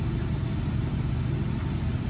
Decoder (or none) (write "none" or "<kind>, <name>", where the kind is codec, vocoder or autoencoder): none